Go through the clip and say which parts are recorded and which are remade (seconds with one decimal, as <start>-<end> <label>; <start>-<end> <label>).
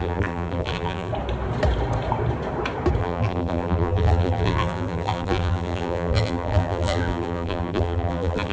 0.0-1.1 remade; 1.1-3.0 recorded; 3.0-8.5 remade